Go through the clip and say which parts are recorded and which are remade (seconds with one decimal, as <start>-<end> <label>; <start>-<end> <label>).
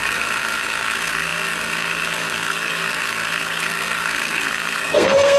0.0-5.4 remade